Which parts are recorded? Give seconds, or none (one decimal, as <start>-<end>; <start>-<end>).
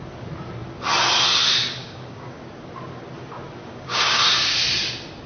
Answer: 0.0-1.8; 2.4-3.6; 4.2-5.3